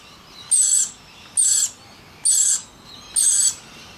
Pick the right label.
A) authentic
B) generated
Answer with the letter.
A